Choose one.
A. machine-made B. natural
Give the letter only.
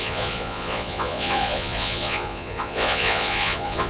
A